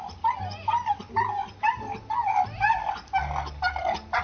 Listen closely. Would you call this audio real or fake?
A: real